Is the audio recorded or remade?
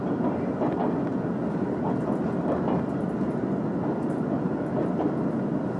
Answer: recorded